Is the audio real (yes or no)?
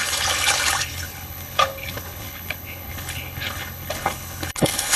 no